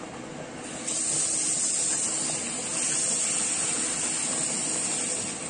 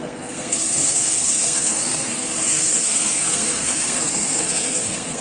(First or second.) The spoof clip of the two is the second